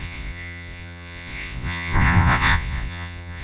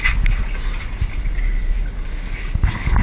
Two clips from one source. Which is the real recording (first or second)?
second